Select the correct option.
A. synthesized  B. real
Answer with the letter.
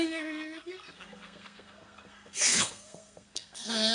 A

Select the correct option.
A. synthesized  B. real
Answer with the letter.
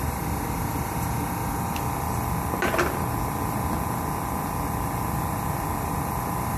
B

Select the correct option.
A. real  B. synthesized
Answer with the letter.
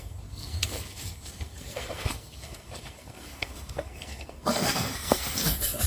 B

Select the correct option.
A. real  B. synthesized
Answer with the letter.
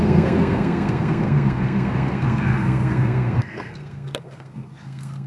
B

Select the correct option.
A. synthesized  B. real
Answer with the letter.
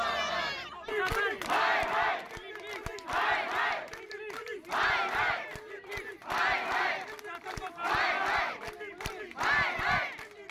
B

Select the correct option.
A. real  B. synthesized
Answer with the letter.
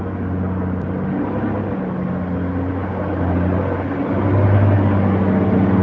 A